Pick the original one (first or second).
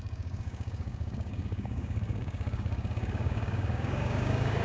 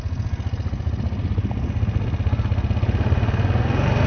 second